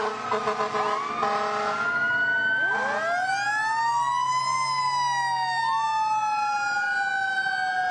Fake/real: real